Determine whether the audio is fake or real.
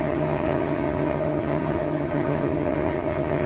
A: fake